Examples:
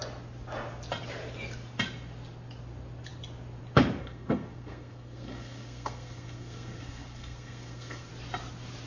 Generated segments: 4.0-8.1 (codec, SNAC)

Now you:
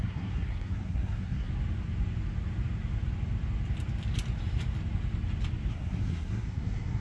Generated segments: 0.0-1.5 (codec, SNAC); 5.7-7.0

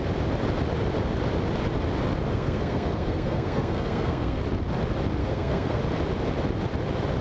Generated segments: 2.3-4.4 (codec, SNAC); 5.2-5.8

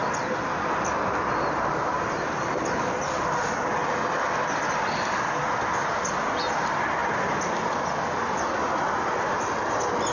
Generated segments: none

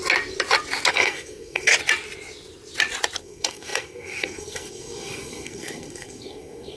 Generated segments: 0.9-1.7 (codec, SNAC); 3.2-6.8

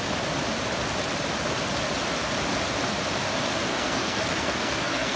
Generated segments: 3.7-5.2 (codec, SNAC)